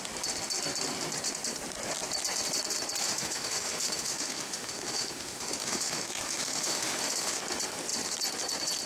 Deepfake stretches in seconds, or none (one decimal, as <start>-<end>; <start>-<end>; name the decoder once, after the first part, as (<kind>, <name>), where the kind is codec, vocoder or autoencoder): 3.0-7.4 (autoencoder, DAC-VAE)